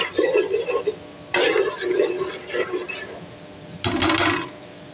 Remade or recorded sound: recorded